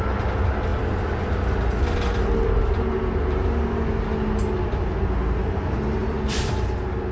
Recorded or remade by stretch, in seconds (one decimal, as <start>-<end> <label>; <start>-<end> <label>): 0.0-6.0 recorded; 6.0-6.5 remade; 6.5-7.1 recorded